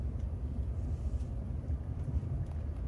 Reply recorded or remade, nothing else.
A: remade